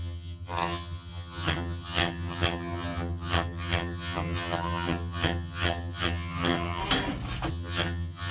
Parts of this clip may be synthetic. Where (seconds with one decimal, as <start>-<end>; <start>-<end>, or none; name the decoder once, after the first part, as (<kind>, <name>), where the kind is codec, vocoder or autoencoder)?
0.0-6.8 (vocoder, HiFi-GAN); 7.5-8.3

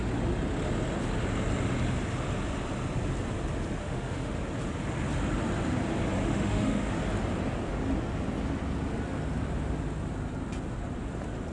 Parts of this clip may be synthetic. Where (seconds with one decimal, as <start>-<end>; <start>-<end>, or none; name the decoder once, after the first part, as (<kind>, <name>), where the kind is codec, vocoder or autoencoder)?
3.8-4.4 (autoencoder, DAC-VAE); 6.2-6.9